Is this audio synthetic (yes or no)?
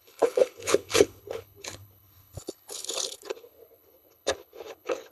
yes